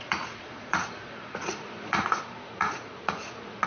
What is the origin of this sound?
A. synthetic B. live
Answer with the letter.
A